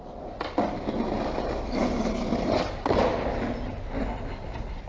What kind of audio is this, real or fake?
real